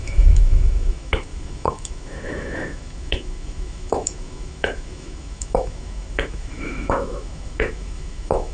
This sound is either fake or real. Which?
fake